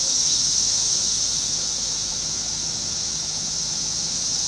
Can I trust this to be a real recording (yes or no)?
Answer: no